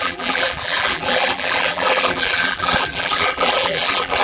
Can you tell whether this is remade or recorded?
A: remade